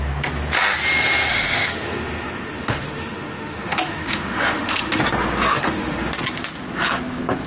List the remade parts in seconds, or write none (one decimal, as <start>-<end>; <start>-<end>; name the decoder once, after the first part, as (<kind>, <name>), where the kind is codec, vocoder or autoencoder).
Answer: 1.3-5.0 (autoencoder, DAC-VAE); 5.5-6.1